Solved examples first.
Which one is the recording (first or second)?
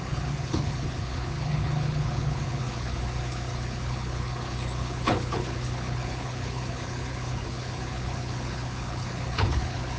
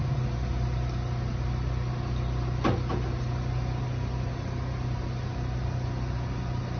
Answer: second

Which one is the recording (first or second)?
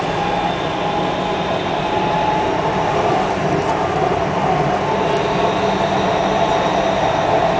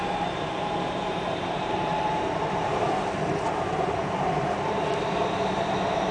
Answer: first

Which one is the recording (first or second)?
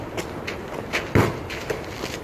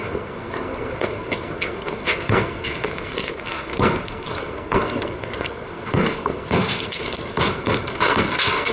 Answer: first